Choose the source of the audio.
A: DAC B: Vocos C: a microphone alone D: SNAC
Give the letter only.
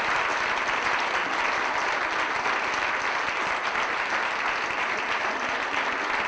C